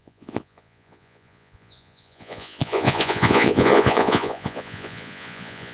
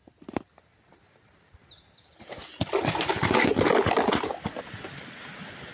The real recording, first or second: second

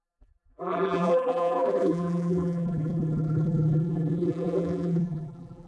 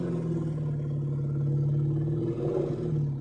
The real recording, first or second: second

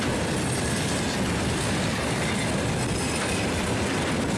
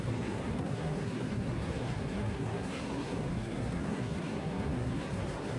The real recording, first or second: first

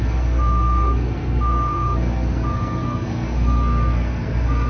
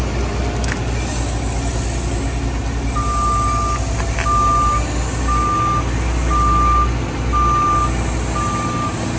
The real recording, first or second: second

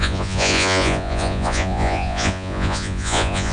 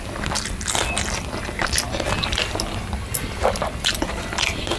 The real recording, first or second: second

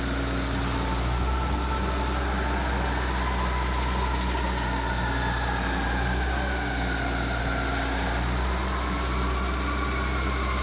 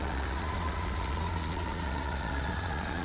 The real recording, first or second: first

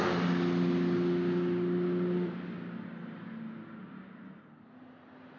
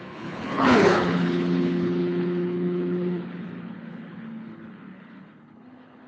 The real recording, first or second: first